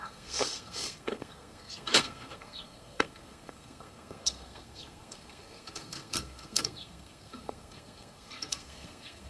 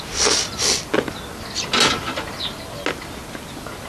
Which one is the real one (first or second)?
second